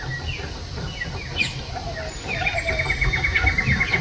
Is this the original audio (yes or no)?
yes